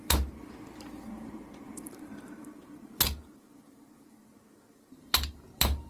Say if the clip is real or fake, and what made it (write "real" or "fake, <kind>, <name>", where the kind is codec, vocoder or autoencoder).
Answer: fake, vocoder, BigVGAN v2